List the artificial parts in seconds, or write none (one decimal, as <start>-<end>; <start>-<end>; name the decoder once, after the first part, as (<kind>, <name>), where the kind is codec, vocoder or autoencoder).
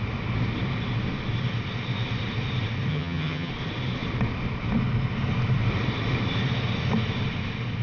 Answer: 2.9-3.5 (vocoder, HiFi-GAN)